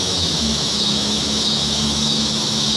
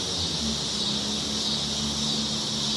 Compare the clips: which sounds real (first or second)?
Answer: second